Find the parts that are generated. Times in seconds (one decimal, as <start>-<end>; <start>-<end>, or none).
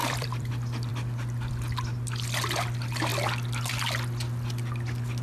0.0-0.5